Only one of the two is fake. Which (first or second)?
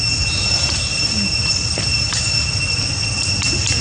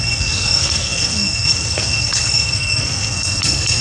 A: second